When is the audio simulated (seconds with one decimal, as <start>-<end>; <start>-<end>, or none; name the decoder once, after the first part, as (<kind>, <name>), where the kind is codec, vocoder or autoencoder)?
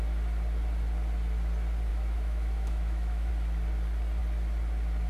1.9-3.3 (autoencoder, DAC-VAE)